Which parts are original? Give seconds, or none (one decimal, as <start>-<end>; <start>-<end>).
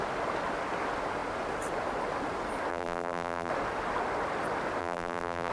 0.0-2.7; 3.5-4.8